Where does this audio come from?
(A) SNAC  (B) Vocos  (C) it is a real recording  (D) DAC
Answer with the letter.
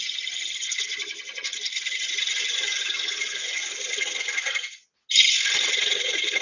C